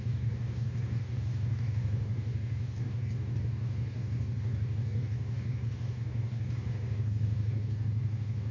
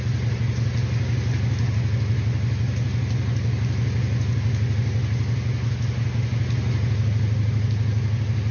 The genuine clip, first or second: second